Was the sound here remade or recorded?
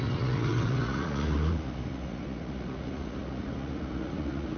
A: remade